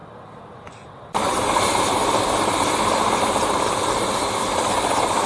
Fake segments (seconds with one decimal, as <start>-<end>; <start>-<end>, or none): none